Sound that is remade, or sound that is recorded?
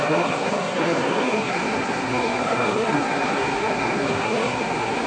remade